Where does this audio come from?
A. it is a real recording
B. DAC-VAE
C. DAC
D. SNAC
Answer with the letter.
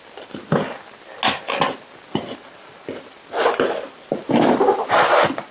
A